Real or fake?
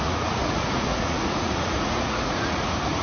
fake